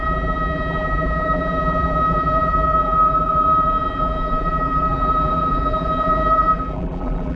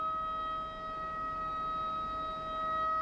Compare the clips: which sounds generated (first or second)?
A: first